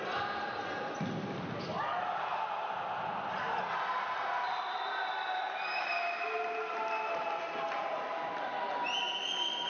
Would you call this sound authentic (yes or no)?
yes